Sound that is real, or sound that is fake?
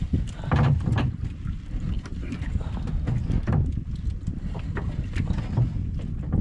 real